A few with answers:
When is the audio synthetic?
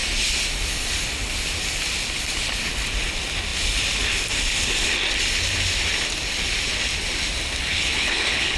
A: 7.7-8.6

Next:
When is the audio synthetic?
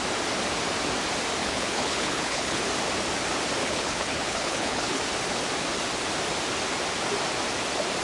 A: 1.4-2.6; 3.6-5.0